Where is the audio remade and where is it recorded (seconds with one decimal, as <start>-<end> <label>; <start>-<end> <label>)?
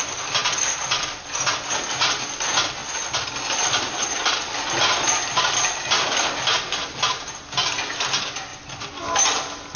0.0-9.8 recorded